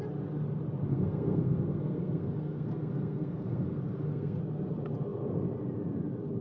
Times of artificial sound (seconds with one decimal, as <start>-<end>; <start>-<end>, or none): 0.9-4.4